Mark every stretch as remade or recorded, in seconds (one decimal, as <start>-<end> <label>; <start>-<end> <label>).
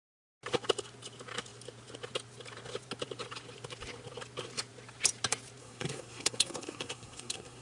0.0-5.6 recorded; 5.6-7.6 remade